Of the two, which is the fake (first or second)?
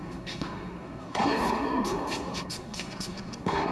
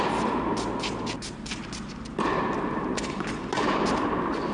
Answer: first